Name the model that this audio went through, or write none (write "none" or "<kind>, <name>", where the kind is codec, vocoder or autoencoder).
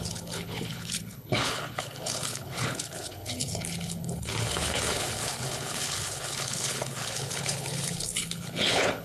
codec, HILCodec